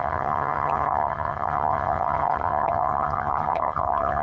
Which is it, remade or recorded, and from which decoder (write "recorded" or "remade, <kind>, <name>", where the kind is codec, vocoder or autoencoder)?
remade, vocoder, HiFi-GAN